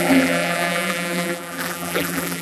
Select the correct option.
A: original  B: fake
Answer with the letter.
B